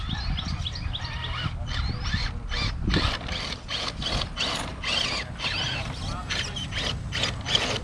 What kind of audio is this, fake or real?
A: real